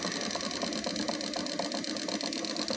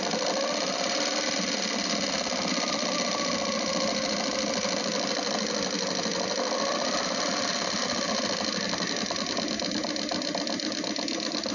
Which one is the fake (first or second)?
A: second